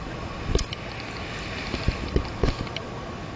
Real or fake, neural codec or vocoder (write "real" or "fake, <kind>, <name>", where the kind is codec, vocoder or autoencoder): real